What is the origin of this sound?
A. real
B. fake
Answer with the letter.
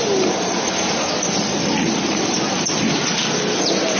A